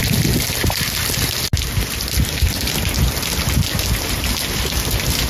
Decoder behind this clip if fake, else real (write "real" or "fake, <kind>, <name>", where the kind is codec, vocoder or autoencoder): real